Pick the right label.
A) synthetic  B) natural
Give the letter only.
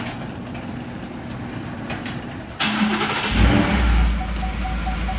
B